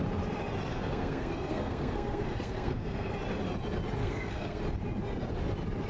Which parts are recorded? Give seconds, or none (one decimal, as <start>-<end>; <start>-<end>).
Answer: 0.0-0.7; 3.1-4.0; 4.6-5.9